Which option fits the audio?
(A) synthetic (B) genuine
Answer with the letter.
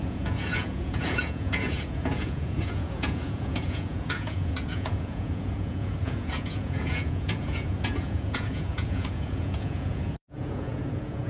A